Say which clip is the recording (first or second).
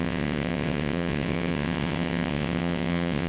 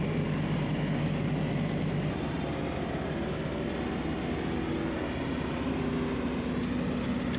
second